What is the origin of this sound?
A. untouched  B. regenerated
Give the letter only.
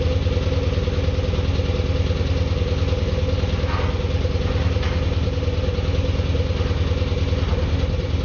A